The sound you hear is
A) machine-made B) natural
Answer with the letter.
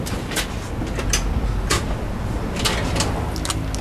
B